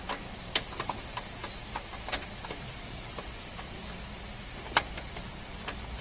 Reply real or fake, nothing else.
real